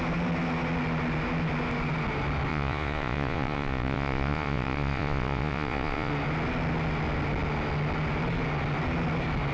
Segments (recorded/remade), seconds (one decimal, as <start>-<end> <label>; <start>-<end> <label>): 0.0-2.5 recorded; 2.5-6.1 remade; 6.1-9.5 recorded